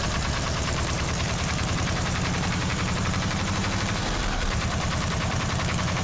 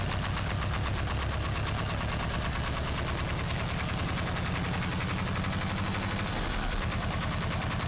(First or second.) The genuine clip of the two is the second